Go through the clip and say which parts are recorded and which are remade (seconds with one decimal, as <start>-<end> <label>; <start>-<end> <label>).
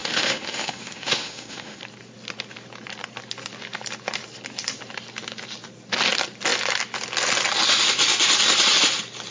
0.0-1.8 remade; 1.8-9.3 recorded